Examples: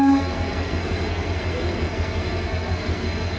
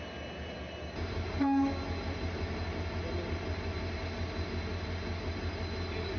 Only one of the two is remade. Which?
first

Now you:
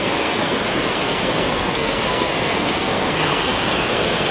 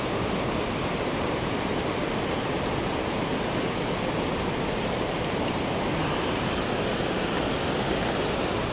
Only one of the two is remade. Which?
first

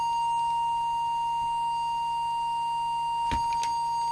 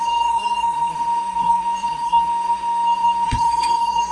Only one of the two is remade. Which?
second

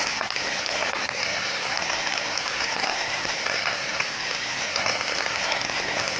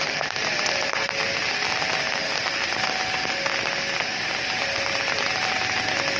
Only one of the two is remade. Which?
first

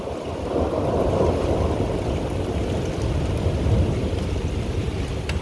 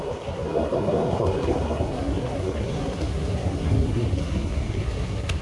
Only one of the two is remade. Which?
second